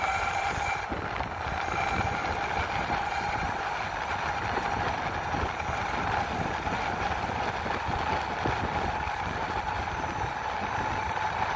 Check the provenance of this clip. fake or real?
real